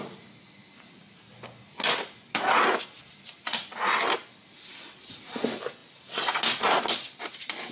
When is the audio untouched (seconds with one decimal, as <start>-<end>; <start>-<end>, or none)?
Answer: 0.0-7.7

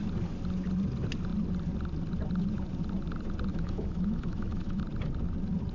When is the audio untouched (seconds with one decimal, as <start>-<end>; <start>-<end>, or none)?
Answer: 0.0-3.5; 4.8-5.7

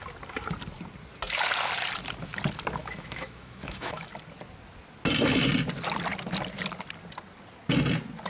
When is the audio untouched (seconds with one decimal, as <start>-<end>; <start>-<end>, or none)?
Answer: 0.0-2.8; 4.1-8.3

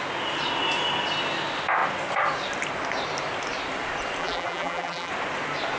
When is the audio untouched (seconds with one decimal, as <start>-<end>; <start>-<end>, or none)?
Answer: 0.0-4.2; 5.1-5.8

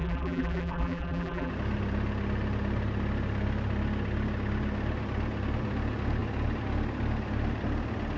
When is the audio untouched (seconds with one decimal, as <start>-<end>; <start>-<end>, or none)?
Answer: 1.5-8.2

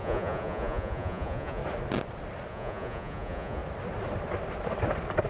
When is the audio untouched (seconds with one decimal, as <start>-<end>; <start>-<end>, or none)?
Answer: 1.6-2.5; 3.6-5.3